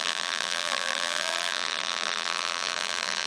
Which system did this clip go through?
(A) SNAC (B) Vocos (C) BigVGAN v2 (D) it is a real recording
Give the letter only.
C